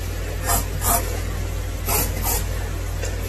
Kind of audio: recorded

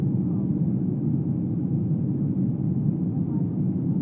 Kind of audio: recorded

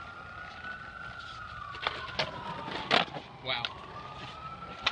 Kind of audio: recorded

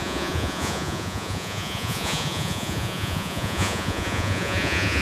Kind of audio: remade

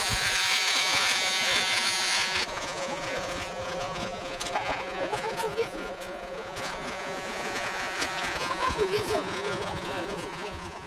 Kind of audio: remade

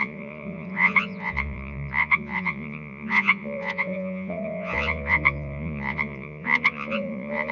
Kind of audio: remade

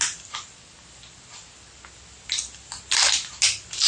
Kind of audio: recorded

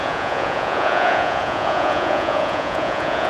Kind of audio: remade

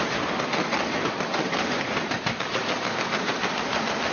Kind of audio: recorded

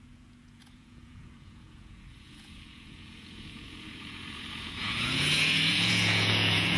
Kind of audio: remade